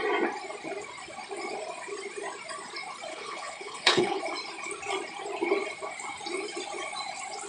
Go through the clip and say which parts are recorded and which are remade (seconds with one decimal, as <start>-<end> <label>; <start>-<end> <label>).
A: 0.0-3.1 recorded; 3.1-4.2 remade; 4.2-7.5 recorded